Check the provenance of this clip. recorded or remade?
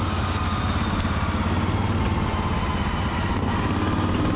recorded